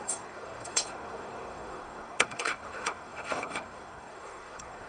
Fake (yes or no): yes